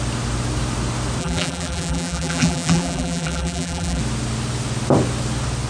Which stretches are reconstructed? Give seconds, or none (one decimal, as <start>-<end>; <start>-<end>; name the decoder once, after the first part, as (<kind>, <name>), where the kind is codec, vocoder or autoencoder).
1.2-4.0 (vocoder, BigVGAN v2)